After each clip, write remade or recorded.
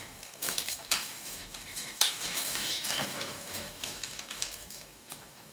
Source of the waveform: remade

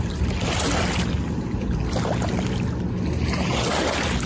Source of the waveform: recorded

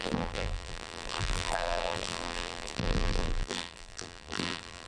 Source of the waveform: remade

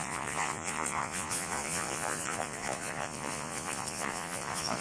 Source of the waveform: remade